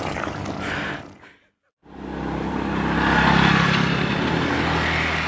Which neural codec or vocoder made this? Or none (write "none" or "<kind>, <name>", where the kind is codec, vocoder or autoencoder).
none